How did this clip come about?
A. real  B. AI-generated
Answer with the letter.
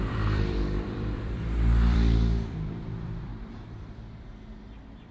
B